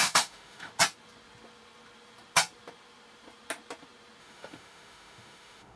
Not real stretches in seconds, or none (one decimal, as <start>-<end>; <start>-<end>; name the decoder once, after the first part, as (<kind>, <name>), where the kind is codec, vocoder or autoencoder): 0.0-0.7 (autoencoder, DAC-VAE); 4.2-5.8